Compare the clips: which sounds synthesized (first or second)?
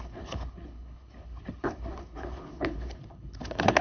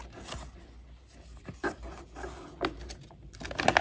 first